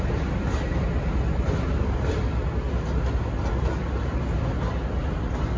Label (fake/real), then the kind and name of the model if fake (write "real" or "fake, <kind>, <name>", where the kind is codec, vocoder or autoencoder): real